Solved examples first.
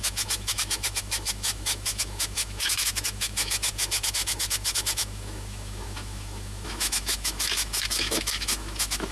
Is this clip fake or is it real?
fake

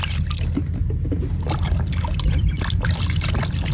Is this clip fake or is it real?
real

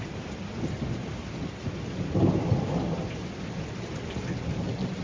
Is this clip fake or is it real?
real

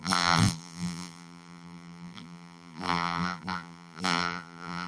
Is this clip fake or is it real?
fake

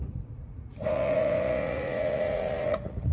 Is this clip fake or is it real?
fake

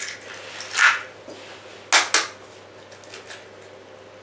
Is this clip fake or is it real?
real